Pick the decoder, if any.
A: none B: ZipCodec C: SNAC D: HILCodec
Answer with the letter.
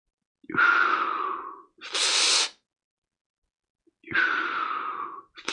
A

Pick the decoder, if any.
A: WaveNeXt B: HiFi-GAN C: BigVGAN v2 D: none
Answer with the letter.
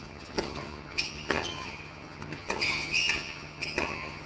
B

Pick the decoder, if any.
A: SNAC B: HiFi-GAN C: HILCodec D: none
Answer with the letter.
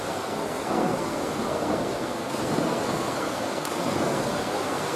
A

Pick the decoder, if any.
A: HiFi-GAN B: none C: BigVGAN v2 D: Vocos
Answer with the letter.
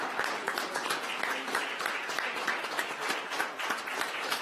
B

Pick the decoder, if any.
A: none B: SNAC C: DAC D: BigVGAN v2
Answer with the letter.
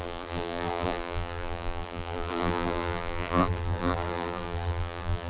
D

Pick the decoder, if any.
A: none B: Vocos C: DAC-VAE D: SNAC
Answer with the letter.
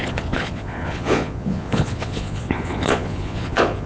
B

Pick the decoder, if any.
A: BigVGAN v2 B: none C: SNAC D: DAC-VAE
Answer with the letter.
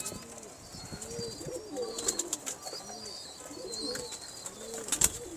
B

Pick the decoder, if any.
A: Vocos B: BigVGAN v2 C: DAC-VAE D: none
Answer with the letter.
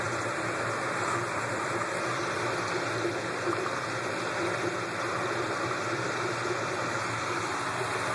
D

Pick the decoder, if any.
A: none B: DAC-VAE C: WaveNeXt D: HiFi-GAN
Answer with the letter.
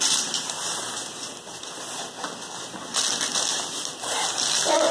A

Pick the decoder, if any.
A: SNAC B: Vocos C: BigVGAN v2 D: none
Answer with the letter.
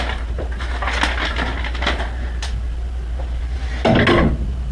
D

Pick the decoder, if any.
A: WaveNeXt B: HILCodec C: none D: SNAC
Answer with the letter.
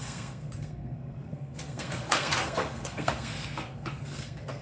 D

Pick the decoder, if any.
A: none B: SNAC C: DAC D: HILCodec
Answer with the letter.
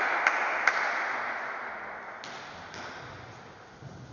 A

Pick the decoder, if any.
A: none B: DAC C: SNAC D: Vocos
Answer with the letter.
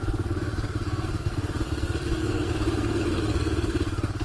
C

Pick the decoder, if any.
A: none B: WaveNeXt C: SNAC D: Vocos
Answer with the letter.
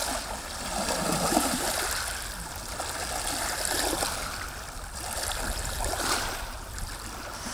A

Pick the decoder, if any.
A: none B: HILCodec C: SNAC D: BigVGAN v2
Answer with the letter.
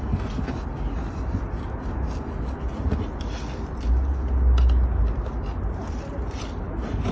A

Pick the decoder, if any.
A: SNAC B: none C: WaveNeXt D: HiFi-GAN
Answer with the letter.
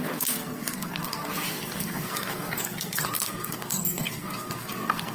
A